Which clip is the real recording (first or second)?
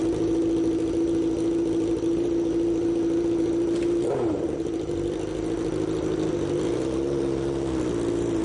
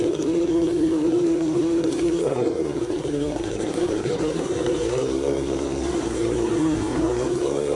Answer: first